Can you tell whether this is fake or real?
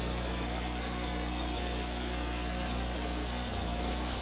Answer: fake